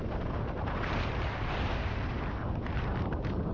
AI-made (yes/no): yes